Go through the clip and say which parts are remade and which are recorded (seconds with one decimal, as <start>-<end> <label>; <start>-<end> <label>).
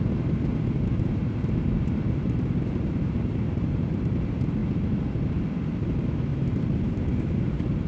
0.0-1.1 recorded; 1.1-4.1 remade; 4.1-6.3 recorded; 6.3-7.9 remade